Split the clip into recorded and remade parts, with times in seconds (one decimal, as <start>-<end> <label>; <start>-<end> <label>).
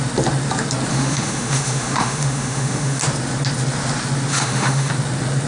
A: 0.0-0.9 recorded; 0.9-3.0 remade; 3.0-4.3 recorded; 4.3-4.9 remade; 4.9-5.5 recorded